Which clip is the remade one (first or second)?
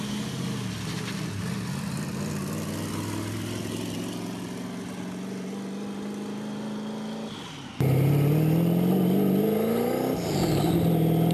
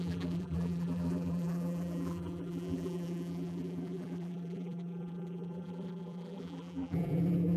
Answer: second